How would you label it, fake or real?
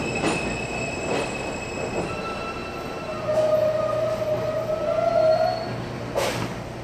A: real